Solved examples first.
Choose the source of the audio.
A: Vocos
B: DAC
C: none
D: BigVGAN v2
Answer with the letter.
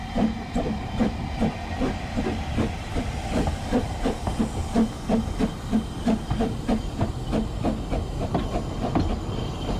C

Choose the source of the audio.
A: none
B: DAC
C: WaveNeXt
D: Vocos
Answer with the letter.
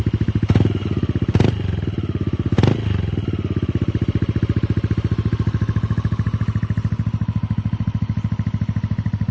A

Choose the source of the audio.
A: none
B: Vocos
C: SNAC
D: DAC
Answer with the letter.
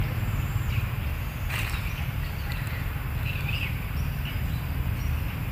A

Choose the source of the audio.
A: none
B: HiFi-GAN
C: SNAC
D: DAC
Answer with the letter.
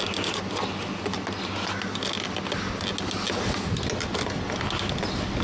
A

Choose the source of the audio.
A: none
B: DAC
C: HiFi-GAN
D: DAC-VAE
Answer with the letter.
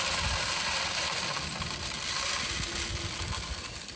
A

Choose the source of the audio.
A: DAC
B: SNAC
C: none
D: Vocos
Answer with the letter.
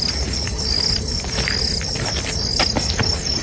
C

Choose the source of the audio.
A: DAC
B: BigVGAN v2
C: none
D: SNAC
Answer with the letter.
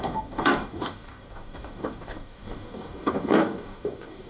A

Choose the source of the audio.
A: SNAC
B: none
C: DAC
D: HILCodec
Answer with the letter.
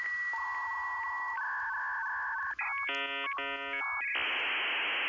B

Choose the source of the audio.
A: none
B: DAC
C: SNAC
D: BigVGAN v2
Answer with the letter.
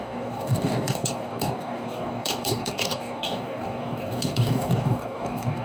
B